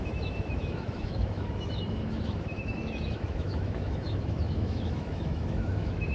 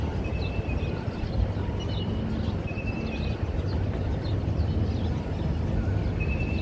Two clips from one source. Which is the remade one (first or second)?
first